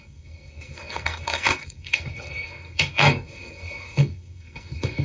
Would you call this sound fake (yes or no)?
yes